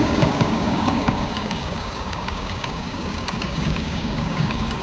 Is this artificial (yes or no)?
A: yes